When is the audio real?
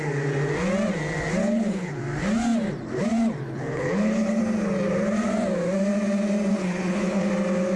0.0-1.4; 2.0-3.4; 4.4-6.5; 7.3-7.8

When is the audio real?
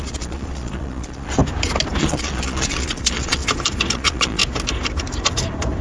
1.4-2.0; 3.4-3.9; 4.4-5.8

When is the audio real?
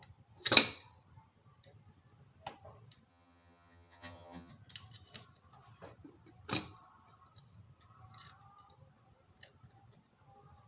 0.0-3.1; 4.5-10.7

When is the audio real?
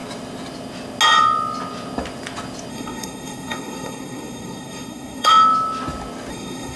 0.0-2.7; 5.3-6.3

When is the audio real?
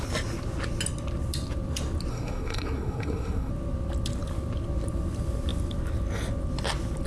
0.0-2.1; 3.5-7.1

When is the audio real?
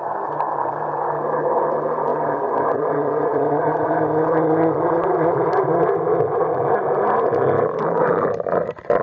0.0-9.0